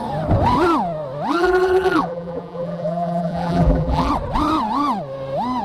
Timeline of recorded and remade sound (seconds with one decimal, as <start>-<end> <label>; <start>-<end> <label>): 0.0-1.3 recorded; 1.3-4.1 remade; 4.1-5.6 recorded